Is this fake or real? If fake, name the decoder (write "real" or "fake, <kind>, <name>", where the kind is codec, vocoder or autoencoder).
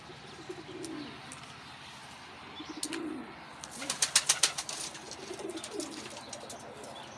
real